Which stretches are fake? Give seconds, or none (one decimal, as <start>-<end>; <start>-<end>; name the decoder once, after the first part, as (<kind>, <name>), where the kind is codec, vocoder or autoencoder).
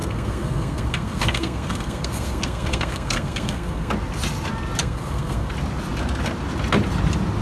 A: 0.0-3.9 (codec, SNAC); 4.8-5.5